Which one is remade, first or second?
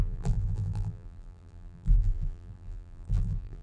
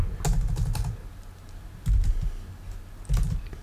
first